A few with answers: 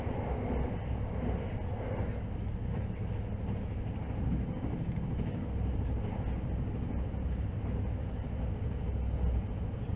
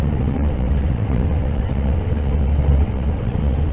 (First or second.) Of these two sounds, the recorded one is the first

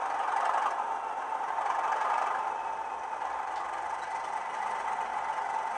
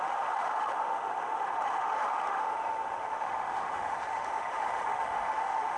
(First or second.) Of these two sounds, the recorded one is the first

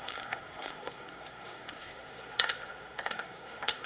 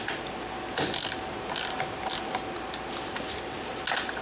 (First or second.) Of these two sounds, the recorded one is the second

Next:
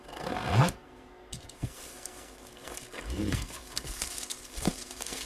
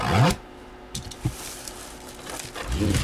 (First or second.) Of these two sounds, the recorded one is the second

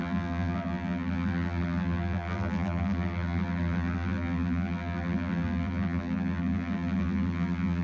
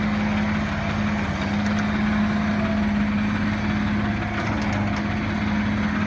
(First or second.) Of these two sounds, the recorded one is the second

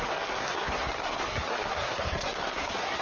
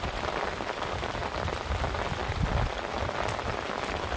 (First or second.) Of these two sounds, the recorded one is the second